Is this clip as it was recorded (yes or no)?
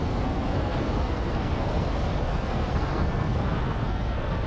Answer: no